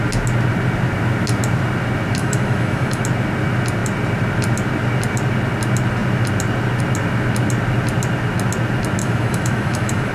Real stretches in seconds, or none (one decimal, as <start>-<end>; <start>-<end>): 0.0-2.2; 3.0-9.0